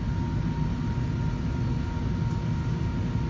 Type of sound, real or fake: real